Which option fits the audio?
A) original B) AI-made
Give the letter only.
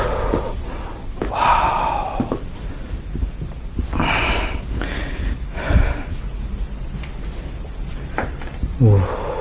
A